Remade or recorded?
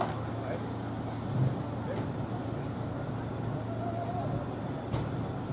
recorded